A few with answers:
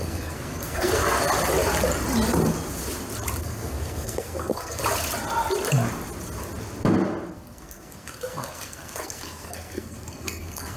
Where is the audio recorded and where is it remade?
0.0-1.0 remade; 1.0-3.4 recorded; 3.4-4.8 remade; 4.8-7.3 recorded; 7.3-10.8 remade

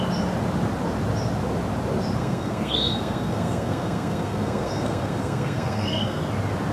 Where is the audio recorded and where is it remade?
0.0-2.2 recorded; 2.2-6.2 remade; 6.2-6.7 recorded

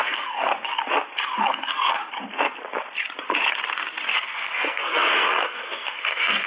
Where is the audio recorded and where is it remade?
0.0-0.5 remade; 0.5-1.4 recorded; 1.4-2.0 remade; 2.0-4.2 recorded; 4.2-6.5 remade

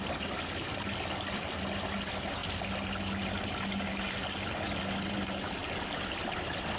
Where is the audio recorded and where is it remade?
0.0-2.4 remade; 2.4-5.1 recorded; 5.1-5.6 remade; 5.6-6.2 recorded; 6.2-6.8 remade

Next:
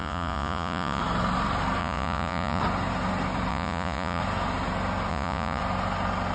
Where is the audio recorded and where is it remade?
0.0-1.0 remade; 1.0-1.8 recorded; 1.8-2.6 remade; 2.6-3.5 recorded; 3.5-4.2 remade; 4.2-5.1 recorded; 5.1-5.6 remade; 5.6-6.3 recorded